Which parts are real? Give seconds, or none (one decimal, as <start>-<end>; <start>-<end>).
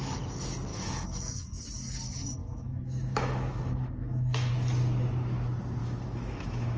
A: 0.0-0.7; 1.6-2.4; 4.5-5.8